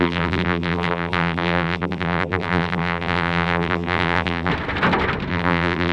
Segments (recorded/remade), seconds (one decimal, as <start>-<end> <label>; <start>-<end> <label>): 0.0-4.5 remade; 4.5-5.3 recorded; 5.3-5.9 remade